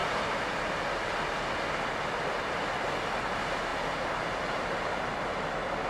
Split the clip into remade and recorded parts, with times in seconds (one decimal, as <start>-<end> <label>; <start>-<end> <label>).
0.0-3.7 recorded; 3.7-4.8 remade; 4.8-5.9 recorded